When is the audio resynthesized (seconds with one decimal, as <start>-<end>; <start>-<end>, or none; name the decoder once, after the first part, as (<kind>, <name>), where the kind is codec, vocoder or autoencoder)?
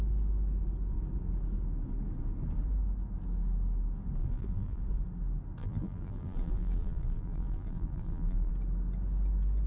4.2-4.8 (vocoder, BigVGAN v2); 5.6-8.5